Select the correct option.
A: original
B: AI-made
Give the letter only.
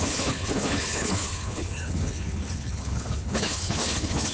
B